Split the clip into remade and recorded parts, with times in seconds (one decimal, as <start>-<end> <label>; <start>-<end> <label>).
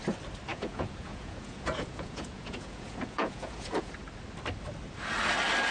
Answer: 0.0-0.5 recorded; 0.5-3.9 remade; 3.9-5.7 recorded